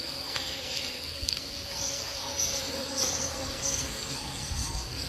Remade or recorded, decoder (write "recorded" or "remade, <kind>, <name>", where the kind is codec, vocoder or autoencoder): remade, codec, SNAC